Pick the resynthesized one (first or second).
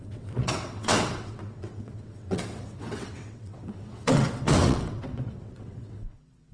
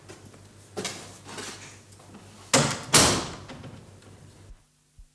first